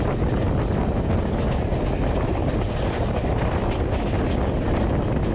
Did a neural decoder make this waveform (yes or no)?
no